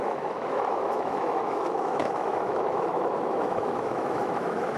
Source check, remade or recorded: remade